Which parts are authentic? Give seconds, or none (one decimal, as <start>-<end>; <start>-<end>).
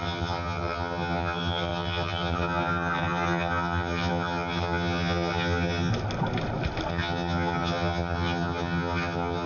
5.9-6.9